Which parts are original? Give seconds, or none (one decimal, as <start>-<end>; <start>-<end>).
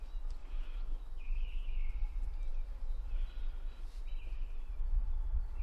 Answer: 0.0-0.4; 1.9-5.6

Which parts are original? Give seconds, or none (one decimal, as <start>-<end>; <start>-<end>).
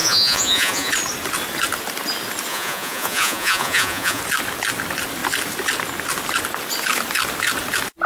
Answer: 0.9-2.5; 4.2-8.1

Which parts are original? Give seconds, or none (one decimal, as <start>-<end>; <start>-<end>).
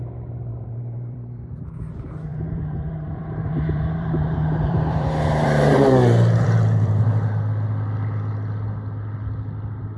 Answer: 0.0-0.5; 1.7-2.3; 7.0-10.0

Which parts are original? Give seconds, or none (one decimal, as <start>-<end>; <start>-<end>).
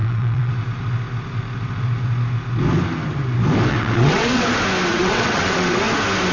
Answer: 0.5-3.7; 4.4-4.9; 5.8-6.3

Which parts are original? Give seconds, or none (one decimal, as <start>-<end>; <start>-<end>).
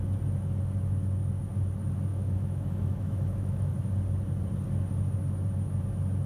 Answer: 0.0-2.1; 3.7-6.3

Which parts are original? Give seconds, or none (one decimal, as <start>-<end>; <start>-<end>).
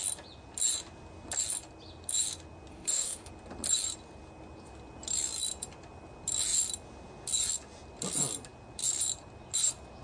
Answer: 0.0-2.7; 3.3-10.0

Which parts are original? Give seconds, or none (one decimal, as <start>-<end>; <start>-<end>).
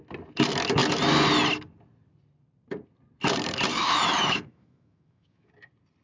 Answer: 0.0-3.7; 5.5-6.0